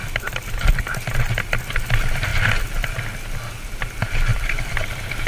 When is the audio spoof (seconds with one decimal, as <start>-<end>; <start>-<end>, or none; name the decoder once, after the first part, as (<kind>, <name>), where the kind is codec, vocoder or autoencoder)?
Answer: 0.0-0.8 (vocoder, BigVGAN v2); 4.3-5.3